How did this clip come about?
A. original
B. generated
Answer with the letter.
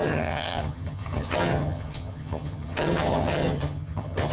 B